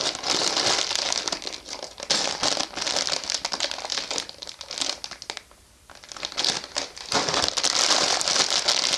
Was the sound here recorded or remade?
recorded